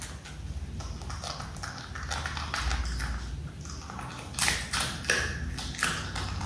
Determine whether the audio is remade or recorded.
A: recorded